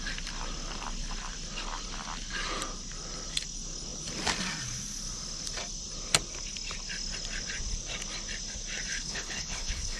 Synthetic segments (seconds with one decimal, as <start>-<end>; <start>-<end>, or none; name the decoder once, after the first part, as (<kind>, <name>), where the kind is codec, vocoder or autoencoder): 8.9-10.0 (codec, HILCodec)